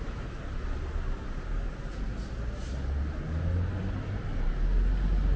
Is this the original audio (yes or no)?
yes